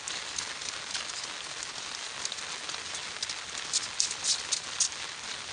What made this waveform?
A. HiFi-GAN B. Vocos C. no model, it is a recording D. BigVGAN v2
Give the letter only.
C